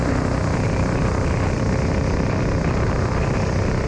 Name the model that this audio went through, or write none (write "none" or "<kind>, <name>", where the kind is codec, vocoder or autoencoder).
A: none